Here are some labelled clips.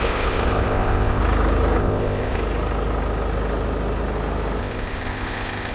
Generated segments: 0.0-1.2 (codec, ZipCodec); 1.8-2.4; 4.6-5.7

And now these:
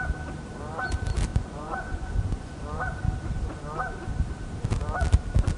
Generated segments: 1.3-2.6 (vocoder, Vocos)

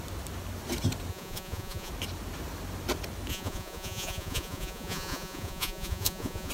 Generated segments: 1.1-1.9 (vocoder, Vocos); 3.3-6.5

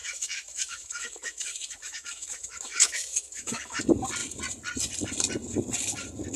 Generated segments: 0.0-3.8 (autoencoder, DAC-VAE)

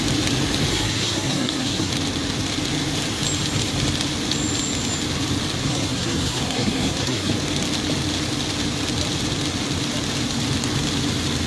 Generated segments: 0.7-1.9 (codec, SNAC); 5.6-7.3

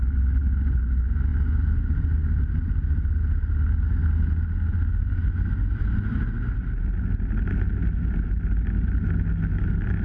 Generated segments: none

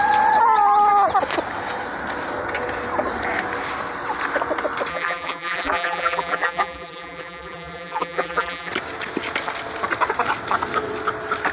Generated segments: 4.9-8.7 (vocoder, BigVGAN v2)

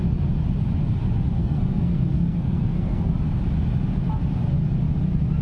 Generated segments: 1.4-3.1 (codec, SNAC)